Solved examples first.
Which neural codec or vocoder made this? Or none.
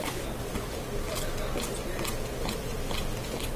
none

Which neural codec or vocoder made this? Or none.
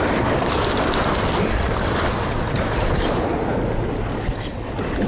none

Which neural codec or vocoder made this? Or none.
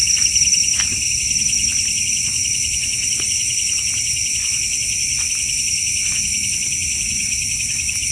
none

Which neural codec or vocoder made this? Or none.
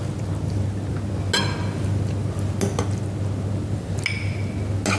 none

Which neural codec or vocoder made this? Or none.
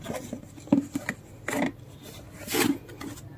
none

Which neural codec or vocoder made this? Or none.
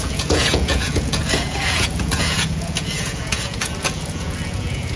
vocoder, Vocos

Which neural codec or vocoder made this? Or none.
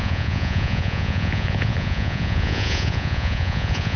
vocoder, Vocos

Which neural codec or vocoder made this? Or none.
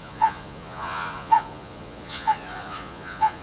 vocoder, Vocos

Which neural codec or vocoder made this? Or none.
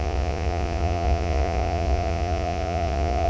vocoder, Vocos